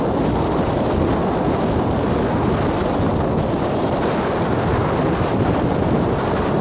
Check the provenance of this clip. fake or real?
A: real